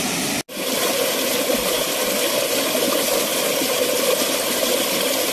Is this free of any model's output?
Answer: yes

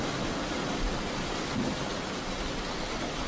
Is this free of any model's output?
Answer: yes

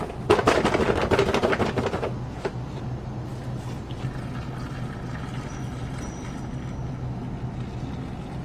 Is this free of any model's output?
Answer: yes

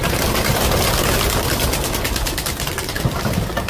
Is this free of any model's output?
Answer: yes